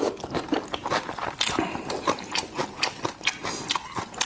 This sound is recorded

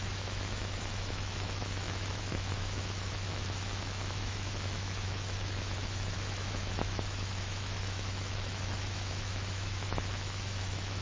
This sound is remade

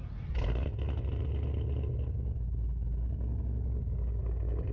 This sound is recorded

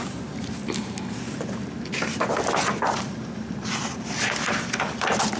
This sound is recorded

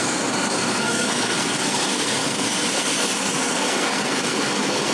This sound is remade